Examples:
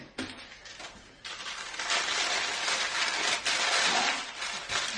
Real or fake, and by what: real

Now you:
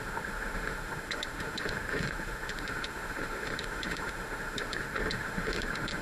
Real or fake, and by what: fake, autoencoder, DAC-VAE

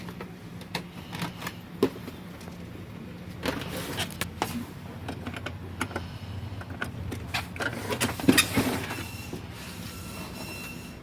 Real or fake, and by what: real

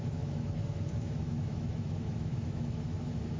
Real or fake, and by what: fake, autoencoder, DAC-VAE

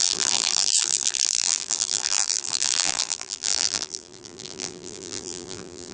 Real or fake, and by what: fake, vocoder, BigVGAN v2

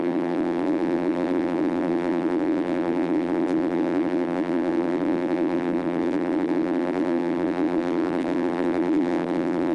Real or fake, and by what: fake, vocoder, BigVGAN v2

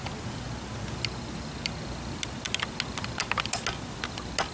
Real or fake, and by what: real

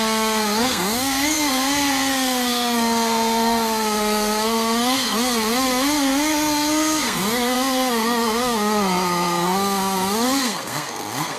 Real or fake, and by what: fake, codec, SNAC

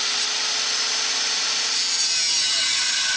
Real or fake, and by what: real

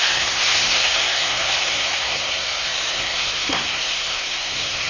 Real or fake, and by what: fake, codec, SNAC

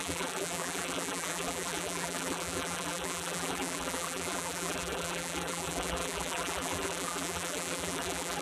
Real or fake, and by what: fake, vocoder, BigVGAN v2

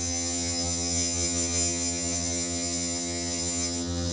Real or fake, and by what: fake, vocoder, HiFi-GAN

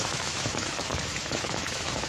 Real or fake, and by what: fake, autoencoder, DAC-VAE